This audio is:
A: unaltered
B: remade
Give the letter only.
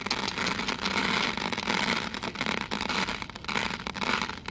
A